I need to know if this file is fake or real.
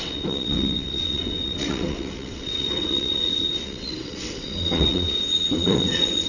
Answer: fake